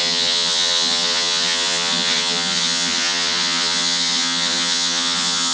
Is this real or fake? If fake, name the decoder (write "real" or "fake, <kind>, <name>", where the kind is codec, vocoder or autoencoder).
fake, vocoder, HiFi-GAN